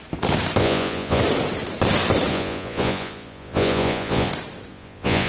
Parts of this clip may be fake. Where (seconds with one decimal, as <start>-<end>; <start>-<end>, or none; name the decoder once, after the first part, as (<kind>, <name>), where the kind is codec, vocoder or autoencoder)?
0.6-1.2 (vocoder, Vocos); 2.3-4.3; 4.7-5.3